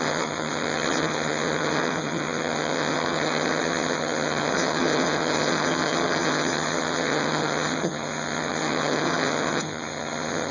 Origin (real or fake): fake